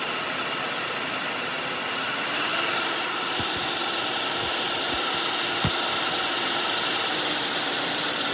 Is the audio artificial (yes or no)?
no